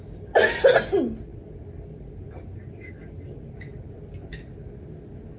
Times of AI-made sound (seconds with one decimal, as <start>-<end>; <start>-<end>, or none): none